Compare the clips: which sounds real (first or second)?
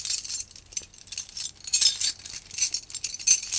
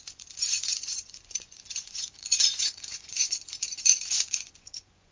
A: first